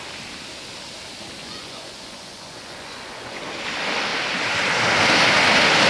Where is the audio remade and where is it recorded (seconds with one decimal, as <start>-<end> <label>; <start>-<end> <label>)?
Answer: 0.0-1.4 recorded; 1.4-3.4 remade; 3.4-5.9 recorded